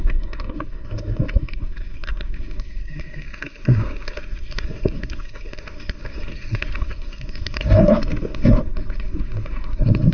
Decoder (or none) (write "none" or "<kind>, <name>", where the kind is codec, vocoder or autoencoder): codec, SNAC